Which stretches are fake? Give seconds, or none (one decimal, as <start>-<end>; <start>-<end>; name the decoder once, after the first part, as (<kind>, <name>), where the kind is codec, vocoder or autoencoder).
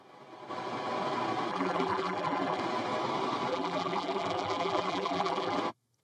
1.5-2.6 (vocoder, BigVGAN v2); 3.5-5.6